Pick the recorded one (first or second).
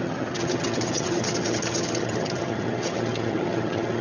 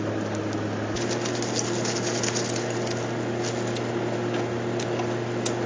second